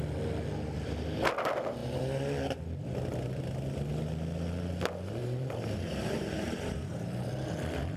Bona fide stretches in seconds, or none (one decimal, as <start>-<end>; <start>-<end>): 0.0-5.2; 7.3-8.0